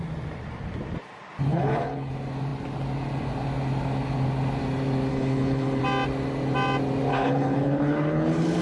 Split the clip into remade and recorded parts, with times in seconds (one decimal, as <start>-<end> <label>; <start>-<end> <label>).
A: 0.0-1.5 recorded; 1.5-2.1 remade; 2.1-5.1 recorded; 5.1-5.8 remade; 5.8-7.1 recorded; 7.1-8.6 remade